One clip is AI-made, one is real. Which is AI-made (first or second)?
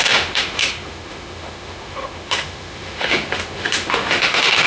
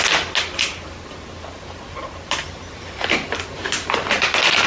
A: first